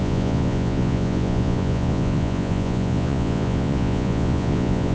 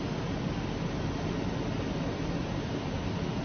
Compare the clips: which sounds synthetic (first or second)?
first